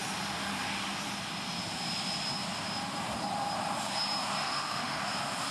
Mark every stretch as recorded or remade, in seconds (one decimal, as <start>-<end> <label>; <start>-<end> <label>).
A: 0.0-4.4 recorded; 4.4-5.0 remade; 5.0-5.5 recorded